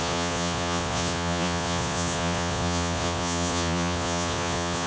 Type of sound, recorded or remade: remade